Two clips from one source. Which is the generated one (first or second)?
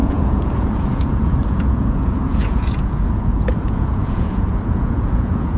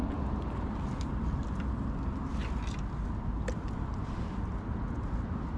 first